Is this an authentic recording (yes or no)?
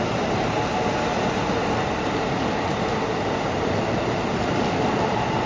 yes